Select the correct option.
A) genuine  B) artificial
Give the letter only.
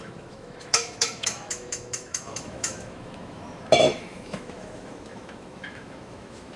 B